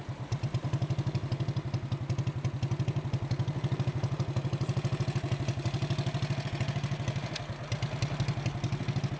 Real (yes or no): yes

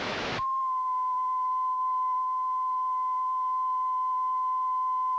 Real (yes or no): no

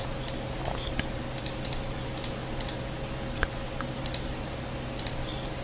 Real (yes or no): yes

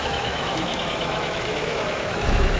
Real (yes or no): no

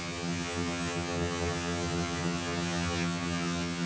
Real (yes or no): no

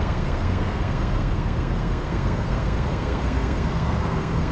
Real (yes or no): no